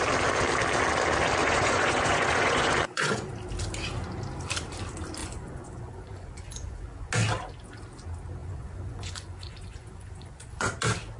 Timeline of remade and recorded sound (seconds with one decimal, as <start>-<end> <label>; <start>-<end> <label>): 0.0-1.4 recorded; 1.4-3.3 remade; 3.3-5.2 recorded; 5.2-7.1 remade; 7.1-8.4 recorded; 8.4-10.7 remade; 10.7-11.2 recorded